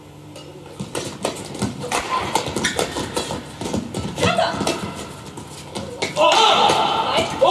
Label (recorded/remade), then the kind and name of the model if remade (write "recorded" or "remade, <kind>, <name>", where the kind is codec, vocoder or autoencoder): recorded